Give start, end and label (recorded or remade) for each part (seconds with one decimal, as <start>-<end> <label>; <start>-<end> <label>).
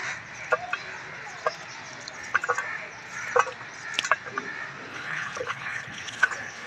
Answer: 0.0-4.9 recorded; 4.9-6.7 remade